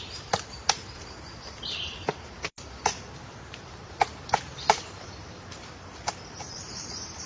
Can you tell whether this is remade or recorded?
remade